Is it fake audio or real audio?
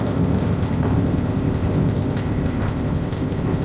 fake